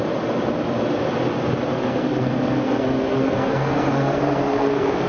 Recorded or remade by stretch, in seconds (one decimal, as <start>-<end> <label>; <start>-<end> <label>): 0.0-1.7 recorded; 1.7-5.1 remade